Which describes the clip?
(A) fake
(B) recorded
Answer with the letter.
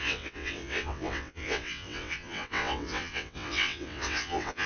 A